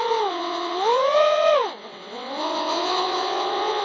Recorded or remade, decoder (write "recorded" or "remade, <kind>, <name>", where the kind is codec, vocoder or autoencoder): remade, vocoder, WaveNeXt